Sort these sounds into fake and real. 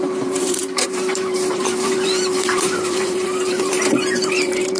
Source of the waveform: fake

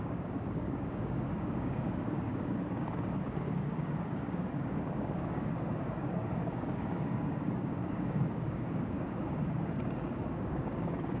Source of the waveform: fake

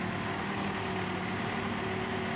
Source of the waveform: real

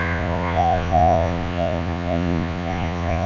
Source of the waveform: fake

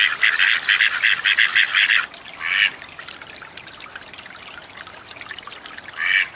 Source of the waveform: real